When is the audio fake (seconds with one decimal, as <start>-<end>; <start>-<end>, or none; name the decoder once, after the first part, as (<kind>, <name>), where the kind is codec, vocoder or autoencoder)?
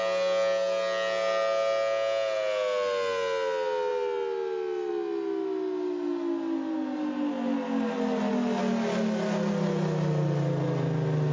none